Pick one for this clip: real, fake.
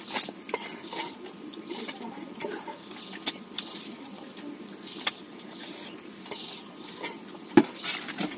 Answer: real